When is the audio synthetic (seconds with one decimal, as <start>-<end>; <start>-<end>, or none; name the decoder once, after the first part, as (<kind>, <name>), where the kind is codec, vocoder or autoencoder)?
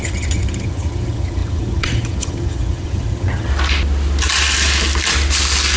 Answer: 0.0-3.5 (vocoder, HiFi-GAN)